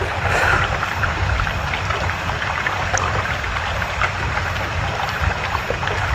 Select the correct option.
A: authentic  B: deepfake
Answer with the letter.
B